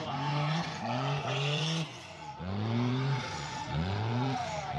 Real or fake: fake